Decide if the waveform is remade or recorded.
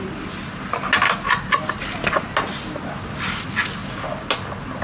recorded